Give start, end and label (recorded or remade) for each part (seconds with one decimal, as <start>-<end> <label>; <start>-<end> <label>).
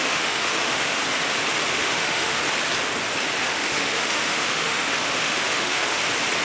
0.0-1.0 remade; 1.0-1.7 recorded; 1.7-2.4 remade; 2.4-3.5 recorded; 3.5-6.0 remade; 6.0-6.4 recorded